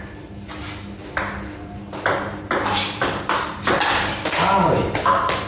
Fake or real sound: real